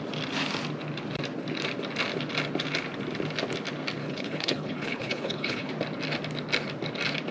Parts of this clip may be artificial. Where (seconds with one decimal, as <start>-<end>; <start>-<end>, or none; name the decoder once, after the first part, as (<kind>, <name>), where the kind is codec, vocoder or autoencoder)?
4.0-5.7 (codec, HILCodec)